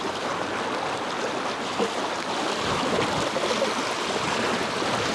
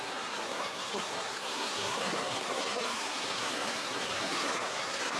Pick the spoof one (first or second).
second